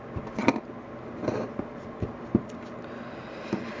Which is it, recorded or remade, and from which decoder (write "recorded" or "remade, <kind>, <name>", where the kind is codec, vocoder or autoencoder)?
recorded